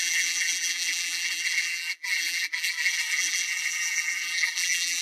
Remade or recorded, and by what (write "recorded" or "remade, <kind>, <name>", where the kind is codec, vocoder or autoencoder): remade, vocoder, BigVGAN v2